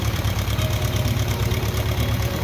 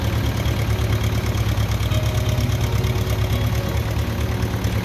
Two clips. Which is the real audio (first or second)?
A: second